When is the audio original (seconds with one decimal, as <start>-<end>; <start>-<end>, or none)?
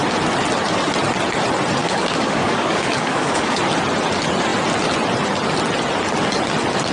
0.0-1.8; 3.6-6.9